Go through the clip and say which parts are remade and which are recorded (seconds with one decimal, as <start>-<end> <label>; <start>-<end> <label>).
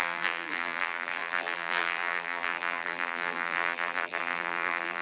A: 0.0-5.0 remade